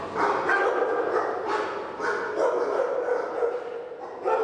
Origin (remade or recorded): recorded